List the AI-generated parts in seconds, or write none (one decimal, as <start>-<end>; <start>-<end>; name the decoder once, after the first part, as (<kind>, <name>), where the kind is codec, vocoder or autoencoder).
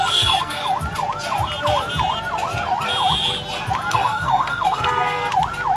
0.0-0.6 (codec, SNAC); 3.9-5.2